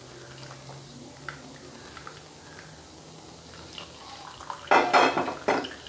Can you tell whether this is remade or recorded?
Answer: recorded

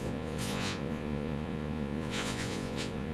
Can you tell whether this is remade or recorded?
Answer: remade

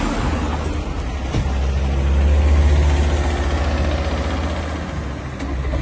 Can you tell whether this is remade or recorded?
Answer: recorded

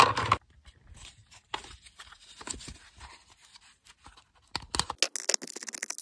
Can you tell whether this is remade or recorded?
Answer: recorded